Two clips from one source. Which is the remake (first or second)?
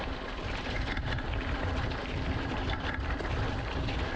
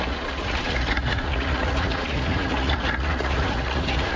second